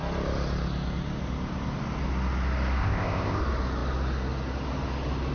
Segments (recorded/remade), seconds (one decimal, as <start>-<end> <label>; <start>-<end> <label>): 0.0-2.8 recorded; 2.8-3.4 remade; 3.4-5.3 recorded